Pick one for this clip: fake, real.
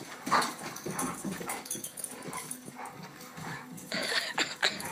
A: fake